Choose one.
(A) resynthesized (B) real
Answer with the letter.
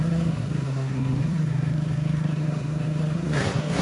A